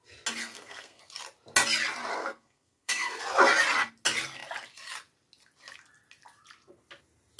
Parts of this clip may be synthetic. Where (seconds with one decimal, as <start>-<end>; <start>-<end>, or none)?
0.4-1.0; 2.1-3.2